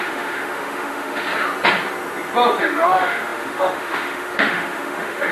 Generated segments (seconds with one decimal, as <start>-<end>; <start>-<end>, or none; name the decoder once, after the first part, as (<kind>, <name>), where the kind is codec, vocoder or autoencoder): 0.0-1.3 (autoencoder, DAC-VAE); 2.6-5.3